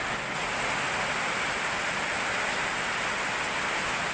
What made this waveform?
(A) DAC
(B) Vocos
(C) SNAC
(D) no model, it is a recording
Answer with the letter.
D